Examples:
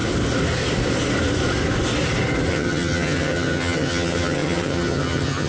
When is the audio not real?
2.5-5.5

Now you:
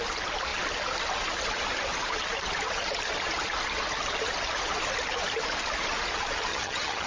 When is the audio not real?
6.5-7.1

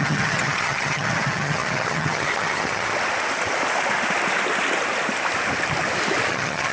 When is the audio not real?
0.0-2.9; 6.3-6.7

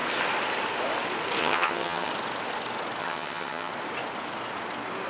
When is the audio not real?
1.4-2.1; 3.0-3.7

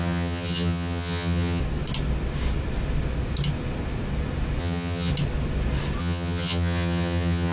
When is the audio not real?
0.0-1.6; 4.6-5.1; 6.0-7.5

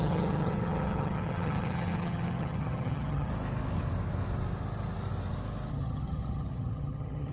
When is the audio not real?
0.0-3.3; 5.7-7.3